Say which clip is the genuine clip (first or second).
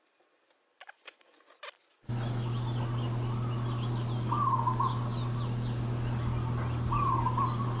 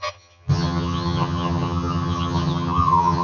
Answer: first